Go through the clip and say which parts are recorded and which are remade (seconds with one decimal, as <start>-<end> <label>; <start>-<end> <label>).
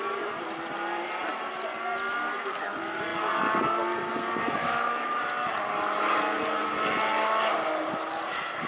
0.0-4.6 recorded; 4.6-5.2 remade; 5.2-8.7 recorded